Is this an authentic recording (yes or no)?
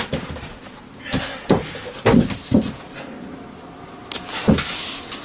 yes